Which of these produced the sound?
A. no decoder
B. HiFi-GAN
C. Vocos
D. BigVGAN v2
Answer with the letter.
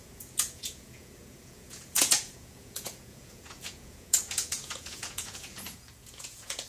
C